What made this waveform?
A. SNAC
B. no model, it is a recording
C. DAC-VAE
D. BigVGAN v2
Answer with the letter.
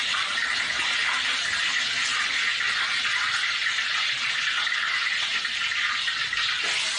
B